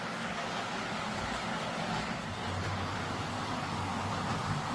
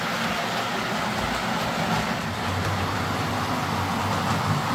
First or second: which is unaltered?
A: second